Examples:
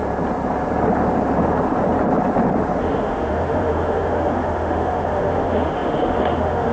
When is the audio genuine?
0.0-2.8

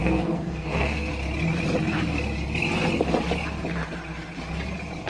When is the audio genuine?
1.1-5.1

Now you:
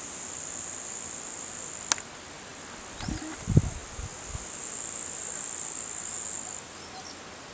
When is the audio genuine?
0.0-7.5